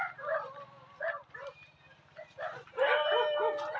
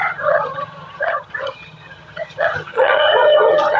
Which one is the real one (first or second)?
first